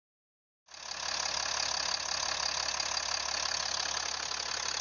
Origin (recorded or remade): recorded